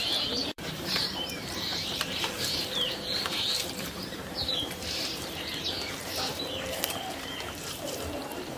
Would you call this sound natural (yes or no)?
no